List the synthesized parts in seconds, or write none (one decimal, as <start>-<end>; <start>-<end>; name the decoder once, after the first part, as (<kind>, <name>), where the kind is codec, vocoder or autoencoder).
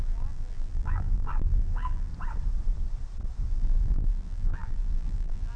0.0-2.1 (vocoder, BigVGAN v2); 3.5-5.6